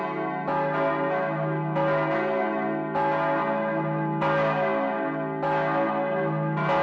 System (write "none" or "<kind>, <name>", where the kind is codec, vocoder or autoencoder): none